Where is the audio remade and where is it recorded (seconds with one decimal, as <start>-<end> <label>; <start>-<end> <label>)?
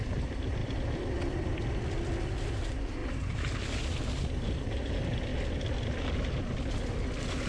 0.0-0.6 recorded; 0.6-1.6 remade; 1.6-5.3 recorded; 5.3-6.2 remade; 6.2-7.5 recorded